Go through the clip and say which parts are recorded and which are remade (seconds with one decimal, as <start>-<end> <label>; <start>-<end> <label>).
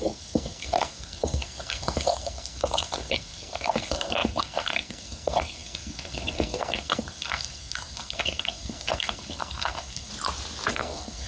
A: 0.0-10.1 remade; 10.1-10.7 recorded; 10.7-11.3 remade